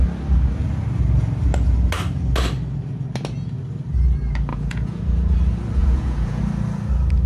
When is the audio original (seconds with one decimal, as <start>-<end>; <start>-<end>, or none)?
0.0-4.5; 5.0-5.8; 6.4-7.3